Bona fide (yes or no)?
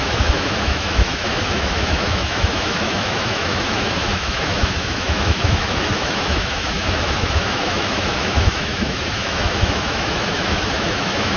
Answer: no